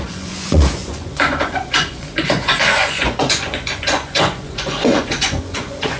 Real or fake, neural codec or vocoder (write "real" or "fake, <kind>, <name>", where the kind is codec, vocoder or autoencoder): fake, vocoder, Vocos